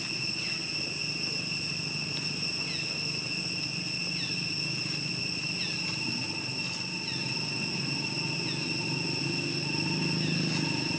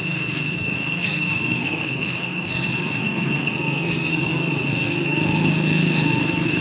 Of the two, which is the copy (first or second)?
second